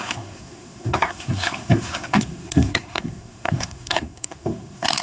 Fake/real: fake